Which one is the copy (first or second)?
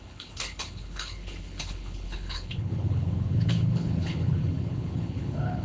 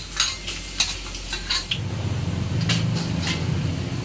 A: first